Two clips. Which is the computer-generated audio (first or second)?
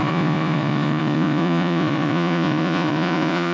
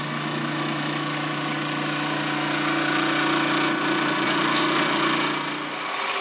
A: first